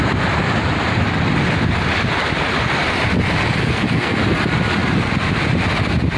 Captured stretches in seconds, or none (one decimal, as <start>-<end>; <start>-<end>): 0.0-3.6; 4.2-6.2